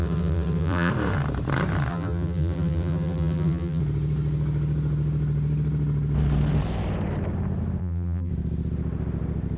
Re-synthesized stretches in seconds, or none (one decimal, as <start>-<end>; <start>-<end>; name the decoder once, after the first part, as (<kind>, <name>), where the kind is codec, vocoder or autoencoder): 0.0-0.9 (vocoder, BigVGAN v2); 1.9-3.8; 7.8-8.3